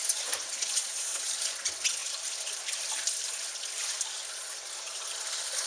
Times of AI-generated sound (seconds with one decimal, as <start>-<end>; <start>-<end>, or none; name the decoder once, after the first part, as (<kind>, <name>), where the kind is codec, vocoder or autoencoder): 2.0-3.6 (vocoder, BigVGAN v2)